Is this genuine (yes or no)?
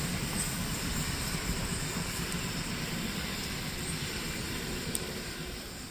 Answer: no